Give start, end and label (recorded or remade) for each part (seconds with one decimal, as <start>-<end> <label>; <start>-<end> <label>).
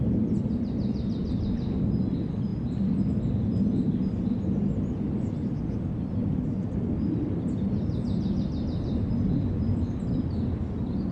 0.0-11.1 recorded